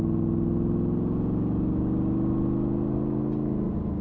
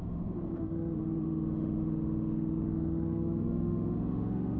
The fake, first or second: second